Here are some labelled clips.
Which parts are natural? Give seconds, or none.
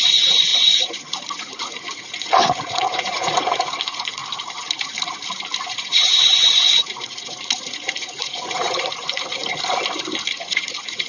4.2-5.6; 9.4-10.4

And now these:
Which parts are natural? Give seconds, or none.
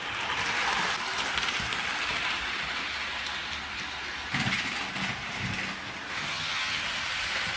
0.0-6.2; 6.8-7.6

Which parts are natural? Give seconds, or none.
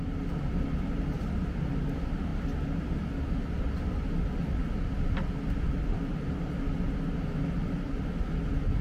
0.0-8.8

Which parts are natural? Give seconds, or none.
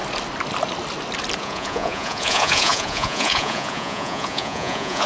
0.0-1.4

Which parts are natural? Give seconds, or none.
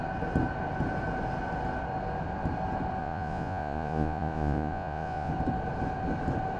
0.0-3.0; 5.3-6.6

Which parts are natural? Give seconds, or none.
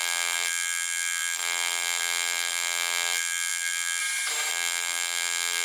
4.0-4.5